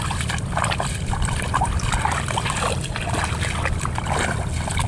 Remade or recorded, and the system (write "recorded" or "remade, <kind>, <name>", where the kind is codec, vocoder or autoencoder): recorded